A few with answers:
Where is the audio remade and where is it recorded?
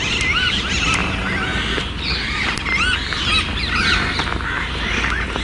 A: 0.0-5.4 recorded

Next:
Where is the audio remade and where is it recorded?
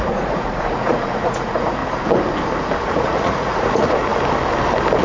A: 0.0-1.8 remade; 1.8-2.8 recorded; 2.8-4.1 remade; 4.1-5.0 recorded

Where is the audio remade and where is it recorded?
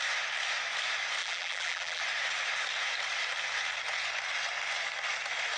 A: 0.0-1.2 recorded; 1.2-2.0 remade; 2.0-5.6 recorded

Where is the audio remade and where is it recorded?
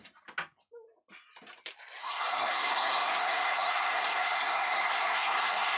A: 0.0-2.0 recorded; 2.0-5.8 remade